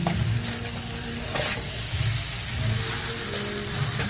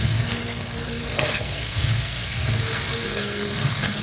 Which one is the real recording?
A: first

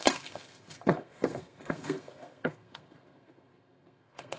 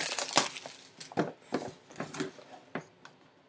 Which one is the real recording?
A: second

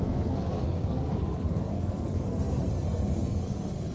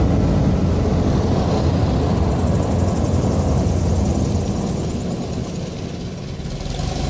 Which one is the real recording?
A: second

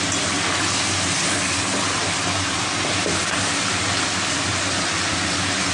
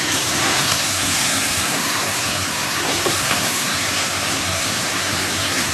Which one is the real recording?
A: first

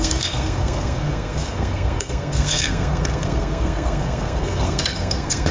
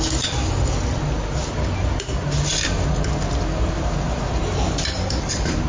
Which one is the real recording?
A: second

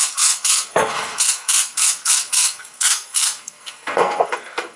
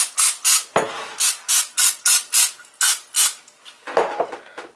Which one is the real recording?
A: second